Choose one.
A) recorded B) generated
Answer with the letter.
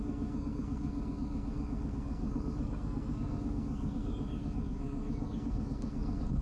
B